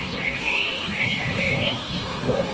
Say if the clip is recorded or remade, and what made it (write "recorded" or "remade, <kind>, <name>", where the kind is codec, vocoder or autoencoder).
remade, codec, SNAC